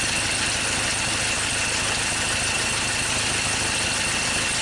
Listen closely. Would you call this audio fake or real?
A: real